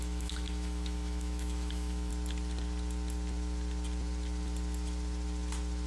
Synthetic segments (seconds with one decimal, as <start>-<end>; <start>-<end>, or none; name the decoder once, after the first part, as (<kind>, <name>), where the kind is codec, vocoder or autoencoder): 0.0-2.1 (autoencoder, DAC-VAE)